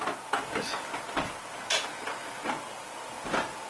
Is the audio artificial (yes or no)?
no